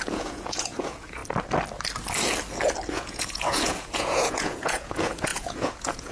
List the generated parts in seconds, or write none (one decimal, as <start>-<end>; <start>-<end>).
0.0-1.2; 2.9-6.1